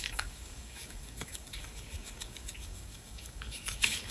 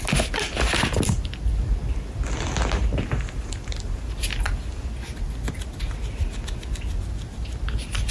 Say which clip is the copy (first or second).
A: first